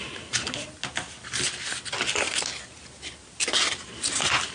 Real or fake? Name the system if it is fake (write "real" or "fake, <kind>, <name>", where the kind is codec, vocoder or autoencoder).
real